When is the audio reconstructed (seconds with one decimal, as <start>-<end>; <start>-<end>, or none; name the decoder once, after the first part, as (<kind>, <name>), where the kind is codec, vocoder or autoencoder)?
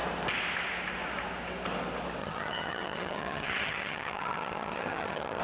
2.2-5.4 (vocoder, HiFi-GAN)